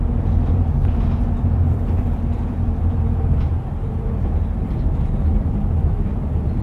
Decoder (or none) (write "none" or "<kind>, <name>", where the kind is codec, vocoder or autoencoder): vocoder, BigVGAN v2